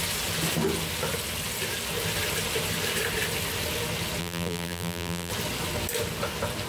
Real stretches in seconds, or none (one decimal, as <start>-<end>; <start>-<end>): 0.0-4.2; 5.3-6.7